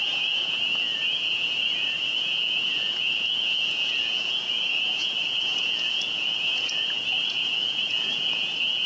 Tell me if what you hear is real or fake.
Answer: fake